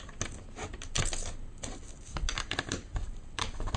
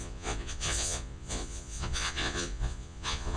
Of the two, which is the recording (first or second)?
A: first